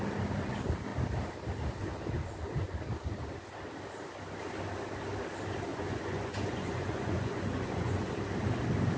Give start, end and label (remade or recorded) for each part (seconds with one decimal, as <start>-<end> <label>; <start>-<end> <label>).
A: 0.0-5.7 recorded; 5.7-8.1 remade; 8.1-9.0 recorded